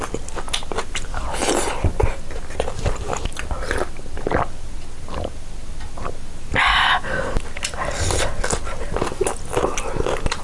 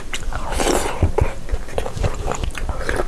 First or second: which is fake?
second